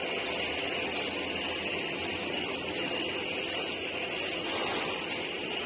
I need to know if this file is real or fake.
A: real